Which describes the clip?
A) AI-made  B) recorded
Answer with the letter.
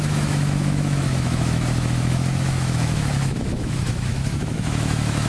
A